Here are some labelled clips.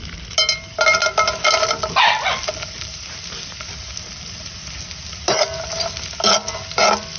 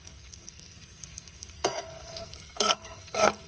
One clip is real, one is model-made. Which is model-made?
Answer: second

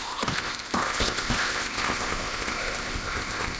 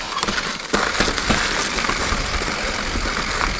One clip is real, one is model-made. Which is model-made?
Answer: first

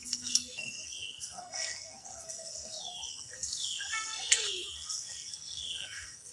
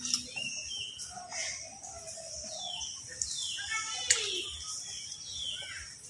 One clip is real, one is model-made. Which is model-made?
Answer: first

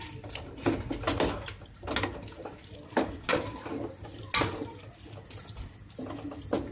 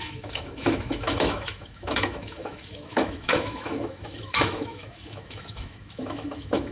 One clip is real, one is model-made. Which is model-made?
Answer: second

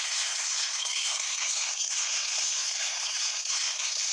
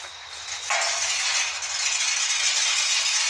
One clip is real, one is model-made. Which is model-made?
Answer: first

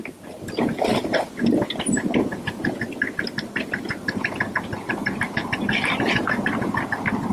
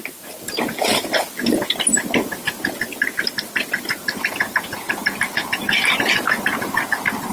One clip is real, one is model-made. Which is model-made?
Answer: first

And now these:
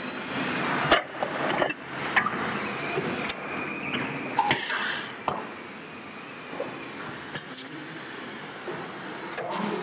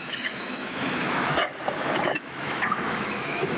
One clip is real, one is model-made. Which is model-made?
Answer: second